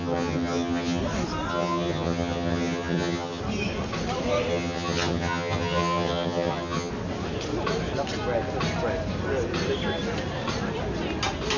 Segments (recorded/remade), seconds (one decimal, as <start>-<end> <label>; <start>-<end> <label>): 0.0-1.0 remade; 1.0-1.5 recorded; 1.5-3.4 remade; 3.4-4.5 recorded; 4.5-6.9 remade; 6.9-11.6 recorded